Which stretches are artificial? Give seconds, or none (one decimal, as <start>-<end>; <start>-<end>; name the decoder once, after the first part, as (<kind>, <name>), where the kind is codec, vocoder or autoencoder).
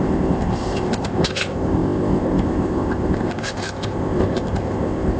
0.0-5.2 (codec, ZipCodec)